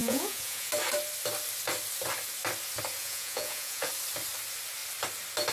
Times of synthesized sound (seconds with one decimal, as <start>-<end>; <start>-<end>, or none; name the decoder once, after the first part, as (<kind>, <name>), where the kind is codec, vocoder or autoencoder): 0.0-0.7 (vocoder, Vocos); 3.0-3.9